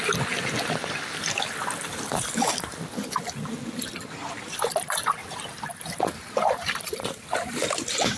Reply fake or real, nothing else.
real